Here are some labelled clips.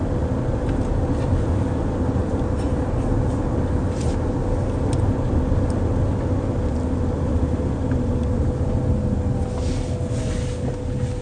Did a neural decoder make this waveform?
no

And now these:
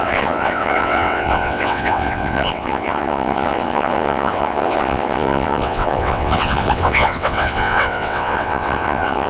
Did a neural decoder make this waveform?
yes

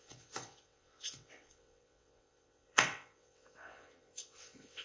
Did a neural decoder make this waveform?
yes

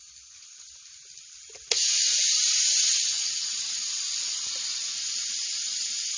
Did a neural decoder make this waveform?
no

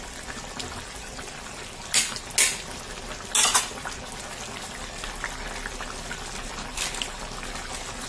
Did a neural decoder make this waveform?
no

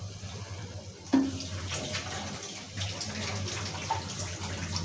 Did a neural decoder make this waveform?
no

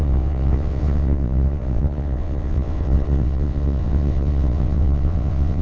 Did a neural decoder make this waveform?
yes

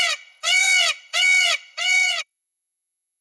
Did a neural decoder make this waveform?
yes